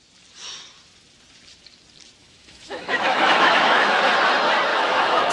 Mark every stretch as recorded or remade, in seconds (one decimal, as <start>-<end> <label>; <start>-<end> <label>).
0.0-2.2 recorded; 2.2-4.0 remade; 4.0-4.7 recorded; 4.7-5.3 remade